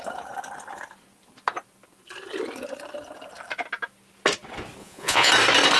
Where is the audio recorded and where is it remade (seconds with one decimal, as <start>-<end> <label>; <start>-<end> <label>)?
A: 0.0-4.8 recorded; 4.8-5.3 remade; 5.3-5.8 recorded